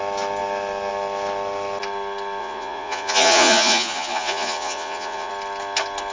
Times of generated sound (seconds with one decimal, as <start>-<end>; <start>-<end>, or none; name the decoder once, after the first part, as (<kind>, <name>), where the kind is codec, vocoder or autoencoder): 2.4-5.3 (vocoder, Vocos)